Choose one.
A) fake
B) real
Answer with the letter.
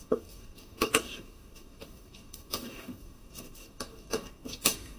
A